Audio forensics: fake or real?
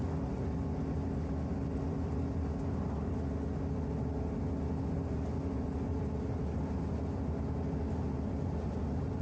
real